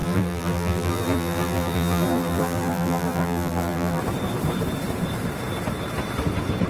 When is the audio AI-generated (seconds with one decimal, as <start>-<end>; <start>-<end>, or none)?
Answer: 0.0-4.0